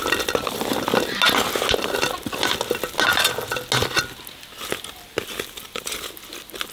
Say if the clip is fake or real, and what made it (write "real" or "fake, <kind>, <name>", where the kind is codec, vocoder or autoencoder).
real